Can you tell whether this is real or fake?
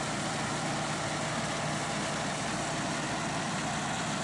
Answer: real